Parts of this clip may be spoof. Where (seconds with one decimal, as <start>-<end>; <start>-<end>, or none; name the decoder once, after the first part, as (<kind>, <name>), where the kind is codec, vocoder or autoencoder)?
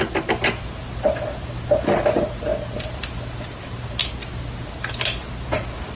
none